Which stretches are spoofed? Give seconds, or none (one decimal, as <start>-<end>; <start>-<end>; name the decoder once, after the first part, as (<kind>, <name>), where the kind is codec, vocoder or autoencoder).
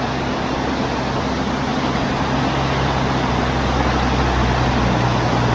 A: none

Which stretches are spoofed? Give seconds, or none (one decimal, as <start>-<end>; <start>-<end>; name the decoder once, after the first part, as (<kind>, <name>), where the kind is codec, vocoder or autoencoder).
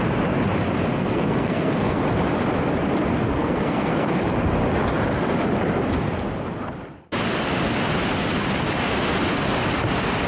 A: 0.9-2.0 (codec, SNAC); 3.4-4.1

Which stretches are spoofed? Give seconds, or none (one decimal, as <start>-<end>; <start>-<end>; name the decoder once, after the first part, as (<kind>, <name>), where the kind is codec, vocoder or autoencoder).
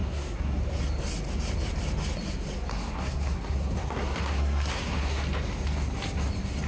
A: 0.0-0.6 (codec, SNAC); 2.7-5.2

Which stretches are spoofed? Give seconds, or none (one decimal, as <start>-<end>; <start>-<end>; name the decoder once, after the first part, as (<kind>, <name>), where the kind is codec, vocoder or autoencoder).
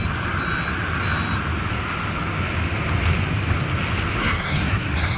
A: 4.2-5.2 (codec, SNAC)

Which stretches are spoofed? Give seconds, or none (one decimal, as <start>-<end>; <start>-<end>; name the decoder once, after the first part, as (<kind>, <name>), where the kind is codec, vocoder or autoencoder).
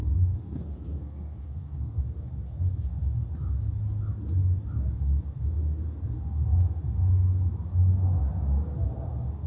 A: 0.0-2.0 (codec, SNAC)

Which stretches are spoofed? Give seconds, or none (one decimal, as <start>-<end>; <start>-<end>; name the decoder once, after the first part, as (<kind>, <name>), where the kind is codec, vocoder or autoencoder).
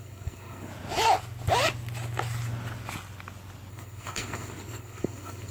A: 0.0-0.7 (codec, SNAC); 3.7-5.5